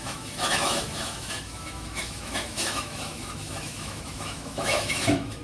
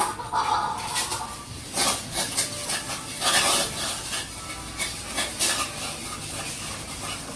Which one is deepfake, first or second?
first